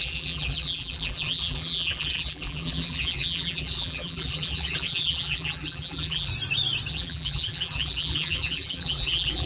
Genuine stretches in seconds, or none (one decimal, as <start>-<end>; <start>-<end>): 6.3-6.9